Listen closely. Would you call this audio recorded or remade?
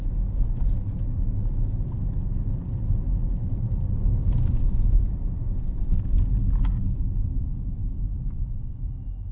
recorded